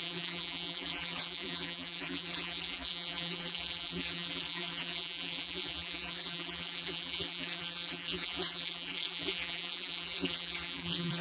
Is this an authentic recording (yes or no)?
no